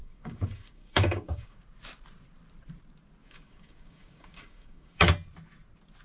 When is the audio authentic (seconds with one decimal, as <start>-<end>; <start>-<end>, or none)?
1.6-3.2; 5.1-6.0